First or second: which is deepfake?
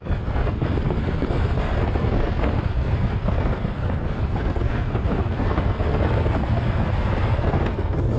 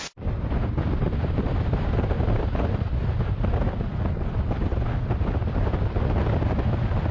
first